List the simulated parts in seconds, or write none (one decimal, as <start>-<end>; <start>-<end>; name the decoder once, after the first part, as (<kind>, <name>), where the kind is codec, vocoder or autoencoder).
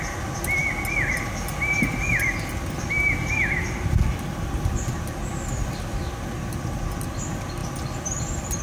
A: none